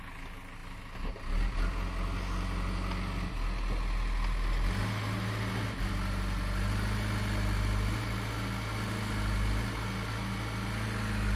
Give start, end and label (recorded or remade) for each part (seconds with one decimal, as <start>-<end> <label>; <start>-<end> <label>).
0.0-11.4 recorded